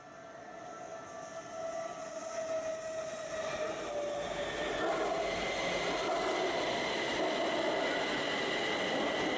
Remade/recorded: recorded